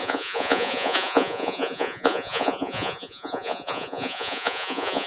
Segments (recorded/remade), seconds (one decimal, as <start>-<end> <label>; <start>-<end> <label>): 0.0-5.1 remade